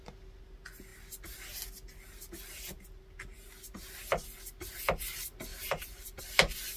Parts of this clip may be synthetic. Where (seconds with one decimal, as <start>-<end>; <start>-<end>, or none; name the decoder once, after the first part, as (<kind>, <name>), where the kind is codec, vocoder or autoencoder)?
5.5-6.2 (vocoder, BigVGAN v2)